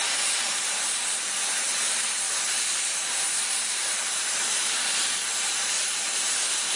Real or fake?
fake